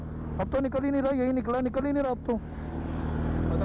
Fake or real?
real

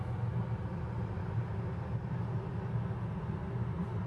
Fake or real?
real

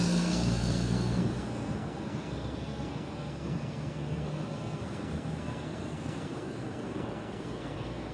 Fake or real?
fake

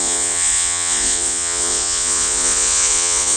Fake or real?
fake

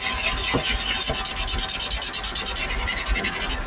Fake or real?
real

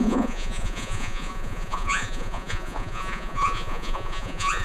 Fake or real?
fake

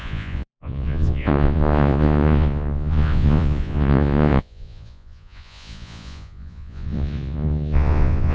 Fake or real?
fake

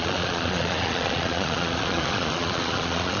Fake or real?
fake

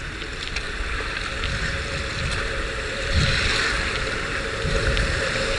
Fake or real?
real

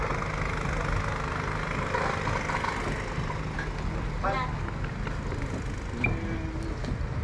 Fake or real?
real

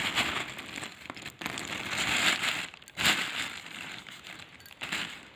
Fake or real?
real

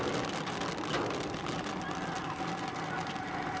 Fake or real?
real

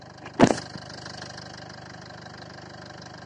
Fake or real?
real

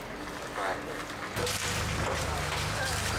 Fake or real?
real